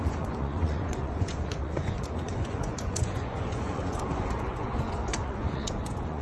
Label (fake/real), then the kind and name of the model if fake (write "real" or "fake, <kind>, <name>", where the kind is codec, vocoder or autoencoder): fake, vocoder, Vocos